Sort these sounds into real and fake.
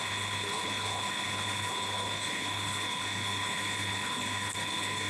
fake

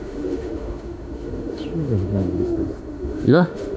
fake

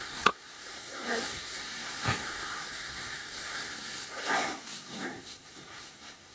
fake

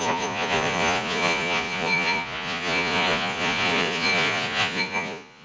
fake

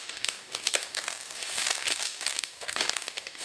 fake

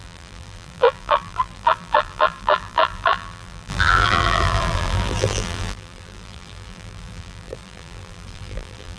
fake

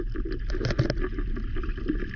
real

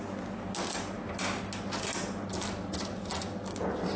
real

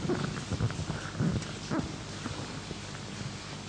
real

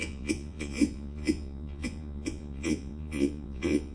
fake